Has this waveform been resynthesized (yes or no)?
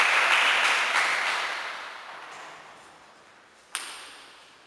no